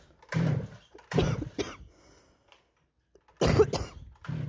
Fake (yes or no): no